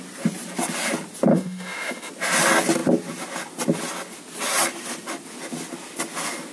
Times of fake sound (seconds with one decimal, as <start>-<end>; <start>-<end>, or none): 1.3-2.1